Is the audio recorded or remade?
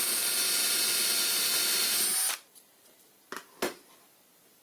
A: recorded